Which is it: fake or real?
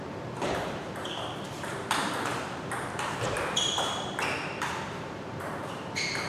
fake